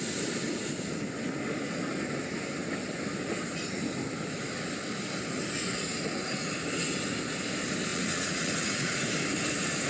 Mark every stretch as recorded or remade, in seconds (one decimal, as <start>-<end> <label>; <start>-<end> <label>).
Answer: 0.0-7.9 recorded; 7.9-9.0 remade; 9.0-9.9 recorded